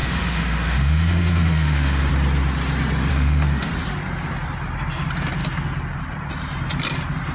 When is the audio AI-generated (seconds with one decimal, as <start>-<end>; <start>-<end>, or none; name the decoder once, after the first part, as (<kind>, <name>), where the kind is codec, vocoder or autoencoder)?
0.0-2.1 (autoencoder, DAC-VAE); 3.1-3.7